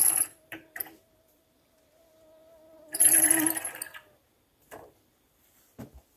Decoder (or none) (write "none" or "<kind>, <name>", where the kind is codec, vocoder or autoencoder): vocoder, BigVGAN v2